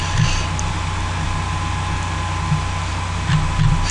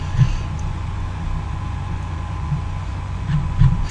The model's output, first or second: second